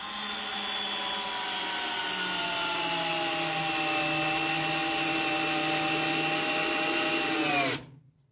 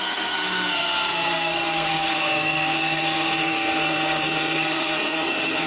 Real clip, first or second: first